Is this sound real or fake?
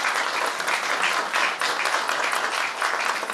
real